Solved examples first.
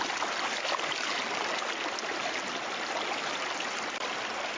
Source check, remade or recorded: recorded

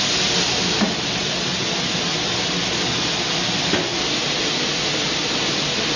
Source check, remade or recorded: recorded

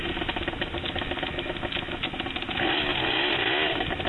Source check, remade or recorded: recorded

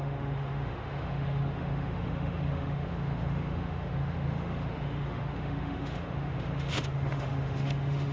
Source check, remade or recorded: remade